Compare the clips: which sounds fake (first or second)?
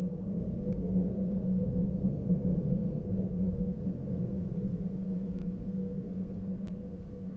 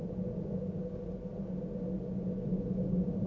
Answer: first